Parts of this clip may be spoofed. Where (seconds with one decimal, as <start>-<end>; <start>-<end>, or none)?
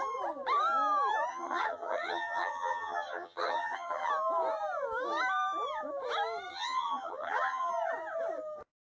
1.3-4.1; 6.5-7.7